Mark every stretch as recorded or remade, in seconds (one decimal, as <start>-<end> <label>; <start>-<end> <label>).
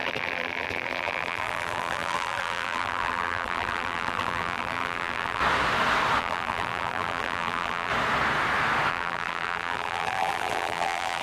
0.0-5.4 remade; 5.4-6.2 recorded; 6.2-7.9 remade; 7.9-8.9 recorded; 8.9-11.2 remade